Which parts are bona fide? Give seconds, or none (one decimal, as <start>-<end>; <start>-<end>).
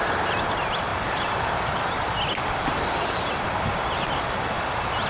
0.0-5.1